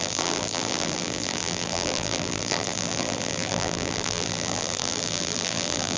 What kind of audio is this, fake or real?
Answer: fake